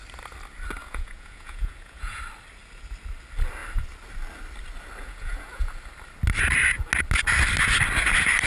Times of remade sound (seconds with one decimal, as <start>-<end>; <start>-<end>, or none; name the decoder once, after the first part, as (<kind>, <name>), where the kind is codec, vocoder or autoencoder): 0.8-2.2 (vocoder, Vocos); 5.0-5.7